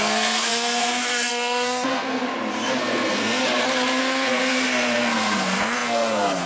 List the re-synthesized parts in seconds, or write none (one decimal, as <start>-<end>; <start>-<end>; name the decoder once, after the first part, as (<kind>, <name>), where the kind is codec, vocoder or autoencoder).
0.0-2.2 (codec, SNAC); 2.8-3.4; 4.0-6.5